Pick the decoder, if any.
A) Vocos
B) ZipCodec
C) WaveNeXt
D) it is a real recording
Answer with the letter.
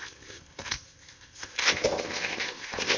B